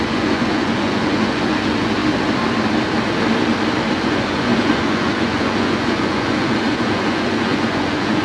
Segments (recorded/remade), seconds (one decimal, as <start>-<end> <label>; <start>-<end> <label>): 0.0-2.0 remade; 2.0-3.9 recorded; 3.9-8.2 remade